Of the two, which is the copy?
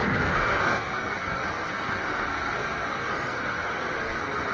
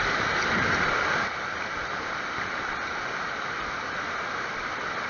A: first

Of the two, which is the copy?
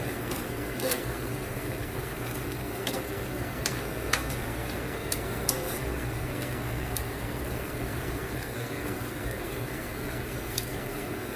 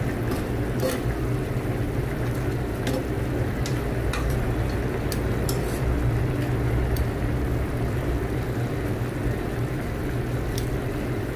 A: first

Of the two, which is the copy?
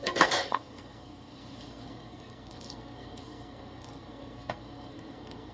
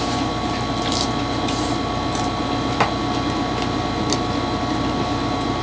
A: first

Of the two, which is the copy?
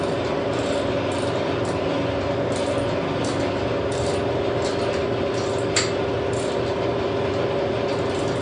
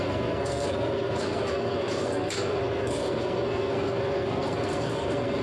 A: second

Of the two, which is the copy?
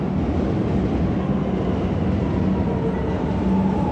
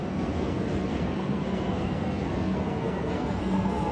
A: second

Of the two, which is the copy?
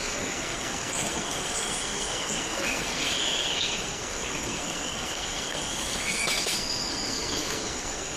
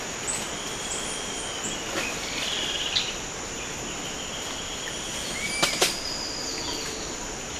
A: first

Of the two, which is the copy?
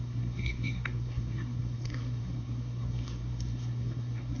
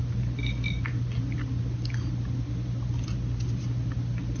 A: first